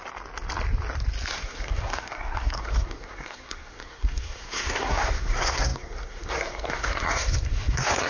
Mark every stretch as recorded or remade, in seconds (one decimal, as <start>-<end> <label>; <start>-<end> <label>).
0.0-1.3 recorded; 1.3-8.1 remade